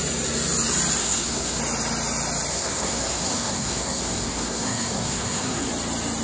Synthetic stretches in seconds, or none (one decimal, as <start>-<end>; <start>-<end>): 1.0-1.6; 2.5-5.7